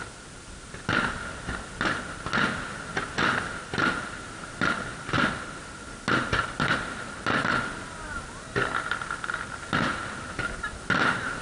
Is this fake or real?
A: real